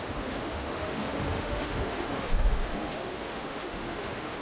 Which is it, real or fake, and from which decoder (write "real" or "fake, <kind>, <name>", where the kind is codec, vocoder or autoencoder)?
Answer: fake, autoencoder, DAC-VAE